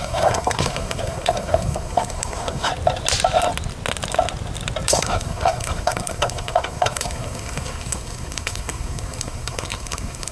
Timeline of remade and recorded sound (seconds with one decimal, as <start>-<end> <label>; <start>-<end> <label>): 0.0-2.7 remade; 2.7-4.9 recorded; 4.9-10.3 remade